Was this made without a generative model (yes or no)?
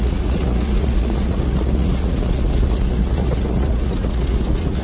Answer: no